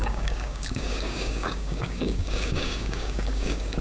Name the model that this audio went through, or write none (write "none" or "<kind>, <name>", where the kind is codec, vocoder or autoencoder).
codec, DAC